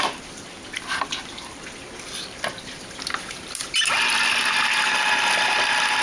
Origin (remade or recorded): recorded